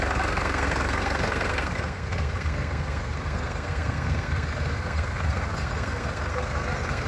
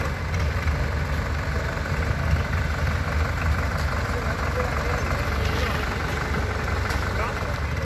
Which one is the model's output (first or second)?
first